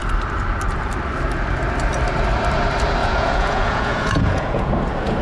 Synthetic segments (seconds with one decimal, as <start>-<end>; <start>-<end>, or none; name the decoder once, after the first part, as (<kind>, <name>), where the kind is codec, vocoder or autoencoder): 3.0-4.7 (vocoder, Vocos)